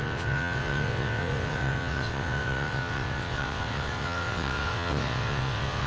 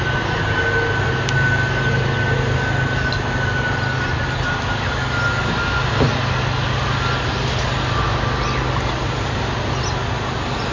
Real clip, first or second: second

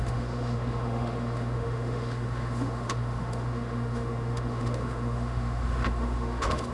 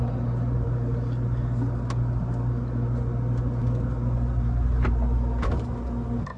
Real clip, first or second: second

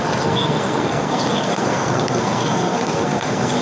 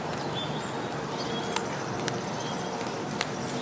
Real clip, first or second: second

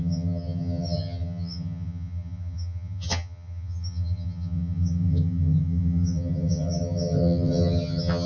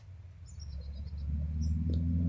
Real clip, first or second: second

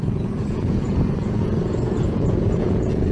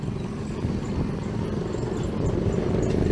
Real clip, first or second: second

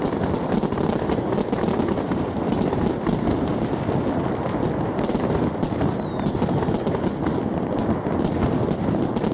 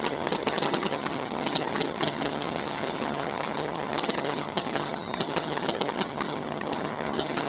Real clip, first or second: first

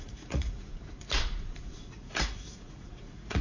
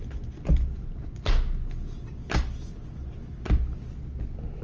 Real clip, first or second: second